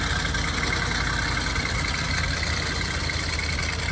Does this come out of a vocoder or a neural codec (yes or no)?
no